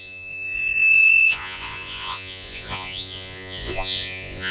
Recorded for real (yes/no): no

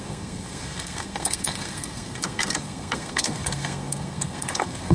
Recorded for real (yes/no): no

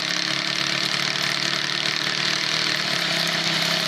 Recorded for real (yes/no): yes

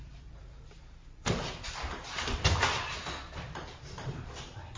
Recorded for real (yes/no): no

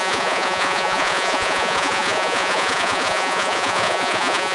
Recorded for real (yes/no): no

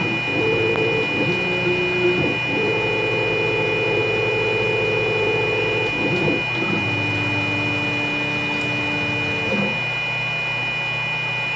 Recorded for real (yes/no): yes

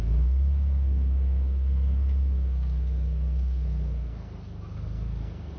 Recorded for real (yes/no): no